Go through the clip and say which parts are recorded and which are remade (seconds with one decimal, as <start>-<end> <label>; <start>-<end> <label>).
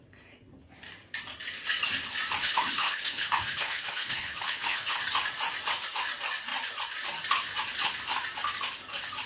0.0-2.4 recorded; 2.4-5.0 remade; 5.0-9.3 recorded